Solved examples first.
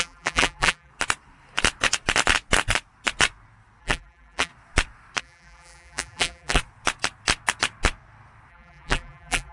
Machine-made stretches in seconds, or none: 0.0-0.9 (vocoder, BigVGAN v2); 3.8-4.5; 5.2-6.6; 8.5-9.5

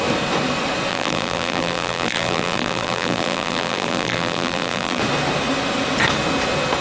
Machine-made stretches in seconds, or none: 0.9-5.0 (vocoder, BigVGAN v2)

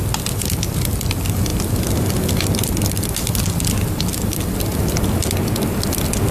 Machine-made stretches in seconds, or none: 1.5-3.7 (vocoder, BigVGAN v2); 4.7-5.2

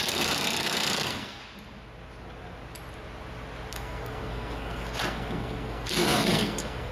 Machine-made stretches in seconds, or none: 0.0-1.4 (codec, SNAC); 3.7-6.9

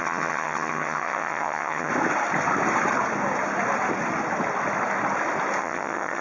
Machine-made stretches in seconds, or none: 0.0-1.9 (vocoder, HiFi-GAN); 5.6-6.2